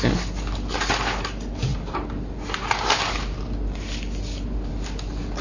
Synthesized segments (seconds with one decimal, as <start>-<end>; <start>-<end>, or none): none